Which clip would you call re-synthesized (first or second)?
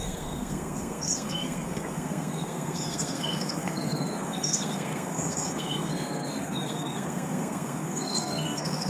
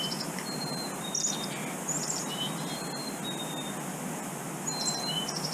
first